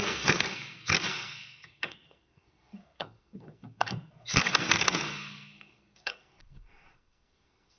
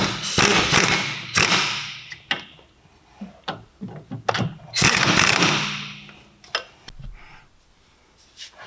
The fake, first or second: first